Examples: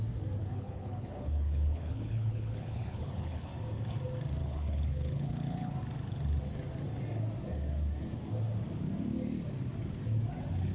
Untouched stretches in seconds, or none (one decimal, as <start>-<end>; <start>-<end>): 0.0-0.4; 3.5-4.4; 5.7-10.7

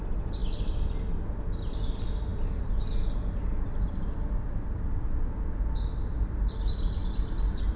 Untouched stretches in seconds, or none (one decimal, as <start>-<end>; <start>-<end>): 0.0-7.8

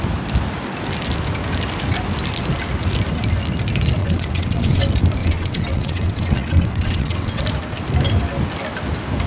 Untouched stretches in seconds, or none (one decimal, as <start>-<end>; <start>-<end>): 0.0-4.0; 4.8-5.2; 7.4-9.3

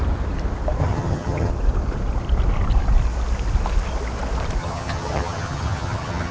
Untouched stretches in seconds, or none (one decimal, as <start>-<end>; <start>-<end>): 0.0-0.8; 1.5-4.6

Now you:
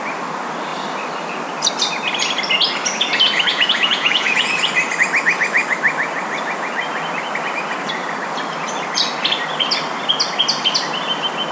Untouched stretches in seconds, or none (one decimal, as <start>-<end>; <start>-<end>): 0.0-3.5; 4.7-11.5

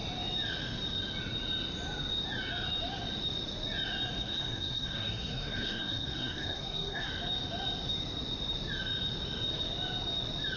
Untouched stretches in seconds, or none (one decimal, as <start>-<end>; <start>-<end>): 0.0-4.2; 7.1-10.6

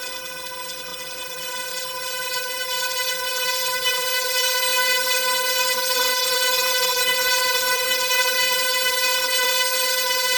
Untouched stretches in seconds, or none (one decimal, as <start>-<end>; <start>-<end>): none

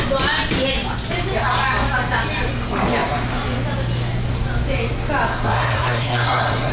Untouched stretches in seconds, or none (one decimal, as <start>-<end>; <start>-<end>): 0.0-5.3